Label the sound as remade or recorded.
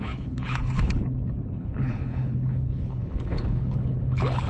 remade